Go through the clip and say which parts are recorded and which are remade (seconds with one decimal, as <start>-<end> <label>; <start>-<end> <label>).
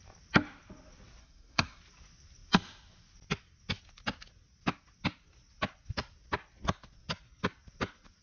0.0-1.2 recorded; 1.2-1.8 remade; 1.8-8.2 recorded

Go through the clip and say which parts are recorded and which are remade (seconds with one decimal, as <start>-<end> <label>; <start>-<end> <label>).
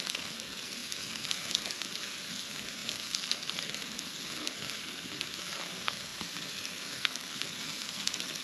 0.0-8.4 remade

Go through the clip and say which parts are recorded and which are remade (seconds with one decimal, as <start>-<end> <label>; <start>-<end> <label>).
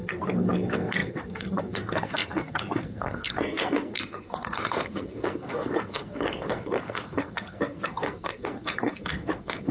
0.0-9.7 remade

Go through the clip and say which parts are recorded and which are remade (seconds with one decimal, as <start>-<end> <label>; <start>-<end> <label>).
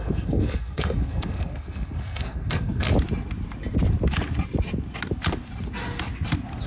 0.0-2.9 remade; 2.9-6.7 recorded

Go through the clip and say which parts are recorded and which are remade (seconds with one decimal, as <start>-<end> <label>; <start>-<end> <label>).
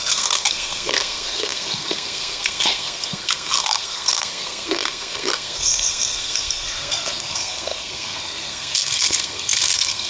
0.0-10.1 remade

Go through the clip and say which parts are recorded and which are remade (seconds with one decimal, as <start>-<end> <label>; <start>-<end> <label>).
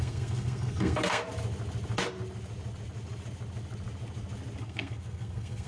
0.0-1.2 remade; 1.2-4.6 recorded; 4.6-5.7 remade